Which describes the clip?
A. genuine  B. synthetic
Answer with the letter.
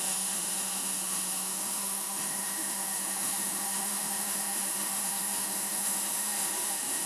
B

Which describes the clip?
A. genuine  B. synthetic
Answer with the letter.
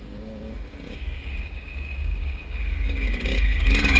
B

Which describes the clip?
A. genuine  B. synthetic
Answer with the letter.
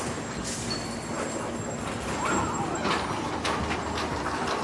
A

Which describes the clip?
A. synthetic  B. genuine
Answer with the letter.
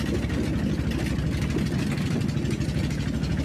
B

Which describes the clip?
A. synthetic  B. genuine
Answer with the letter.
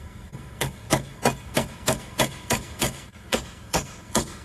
A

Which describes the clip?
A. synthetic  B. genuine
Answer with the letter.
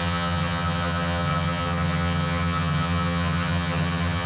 A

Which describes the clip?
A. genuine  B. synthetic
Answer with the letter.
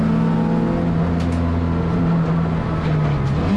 A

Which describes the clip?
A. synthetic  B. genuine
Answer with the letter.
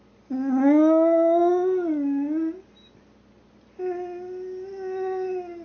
B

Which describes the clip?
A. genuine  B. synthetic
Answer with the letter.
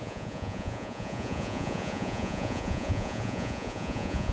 B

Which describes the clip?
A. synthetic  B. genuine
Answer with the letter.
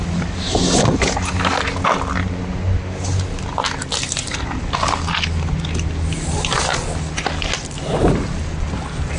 B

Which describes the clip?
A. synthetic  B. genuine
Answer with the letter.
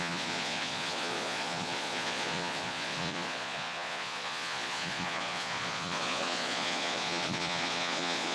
A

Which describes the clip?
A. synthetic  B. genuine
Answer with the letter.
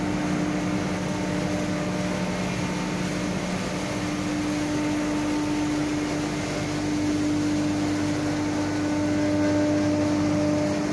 B